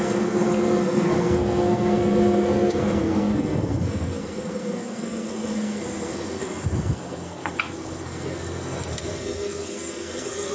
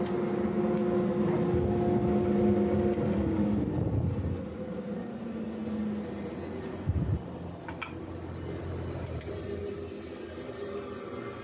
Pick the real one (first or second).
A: second